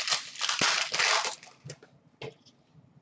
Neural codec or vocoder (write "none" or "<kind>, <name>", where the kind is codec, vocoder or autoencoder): none